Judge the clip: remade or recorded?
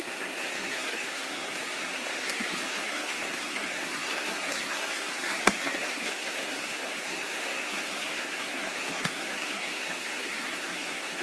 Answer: remade